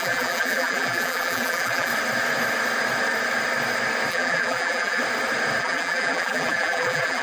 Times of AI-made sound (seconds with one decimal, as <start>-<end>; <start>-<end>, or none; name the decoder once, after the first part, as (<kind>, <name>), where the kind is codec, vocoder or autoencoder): 0.0-1.9 (vocoder, BigVGAN v2); 4.1-5.0; 5.6-7.2